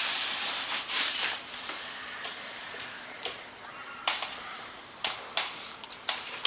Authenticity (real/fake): fake